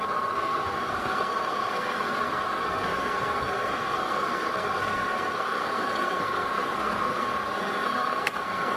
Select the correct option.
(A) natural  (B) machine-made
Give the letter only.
B